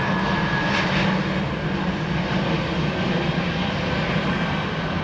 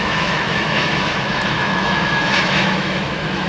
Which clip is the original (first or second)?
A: first